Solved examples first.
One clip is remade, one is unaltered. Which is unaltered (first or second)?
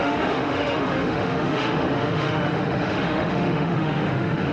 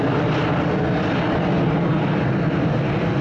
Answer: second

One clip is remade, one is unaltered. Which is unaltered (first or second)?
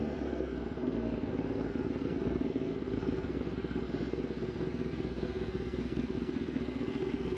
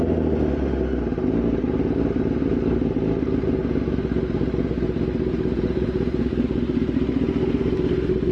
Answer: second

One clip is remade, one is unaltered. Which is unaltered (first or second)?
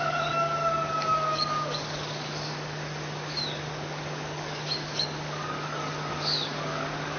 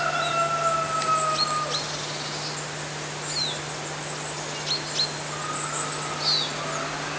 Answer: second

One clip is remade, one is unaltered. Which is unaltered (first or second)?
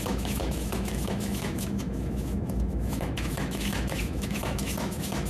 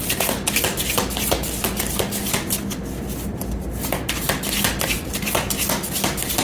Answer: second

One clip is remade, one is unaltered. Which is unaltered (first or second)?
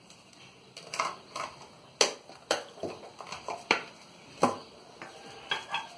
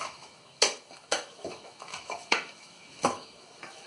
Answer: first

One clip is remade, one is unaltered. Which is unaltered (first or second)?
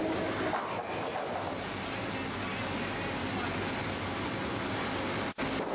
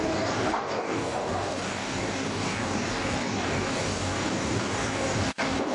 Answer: first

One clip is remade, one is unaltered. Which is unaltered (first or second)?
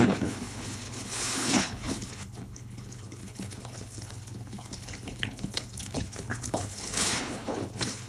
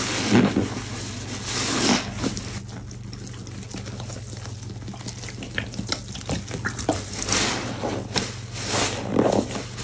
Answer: second